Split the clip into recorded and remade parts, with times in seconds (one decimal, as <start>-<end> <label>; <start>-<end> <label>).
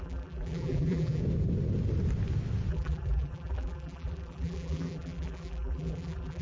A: 0.0-1.2 remade; 1.2-2.7 recorded; 2.7-6.4 remade